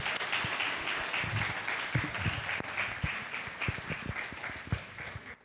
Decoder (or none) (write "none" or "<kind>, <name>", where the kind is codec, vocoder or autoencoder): none